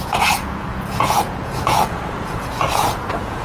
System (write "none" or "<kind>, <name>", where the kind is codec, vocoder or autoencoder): vocoder, Vocos